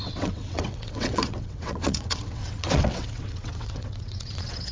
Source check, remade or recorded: remade